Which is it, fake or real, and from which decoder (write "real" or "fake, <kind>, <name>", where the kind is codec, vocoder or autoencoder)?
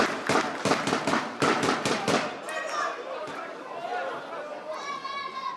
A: real